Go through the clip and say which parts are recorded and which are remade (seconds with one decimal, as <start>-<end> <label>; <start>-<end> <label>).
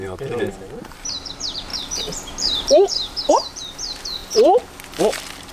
0.0-4.2 remade; 4.2-5.5 recorded